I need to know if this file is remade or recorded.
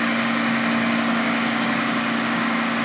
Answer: remade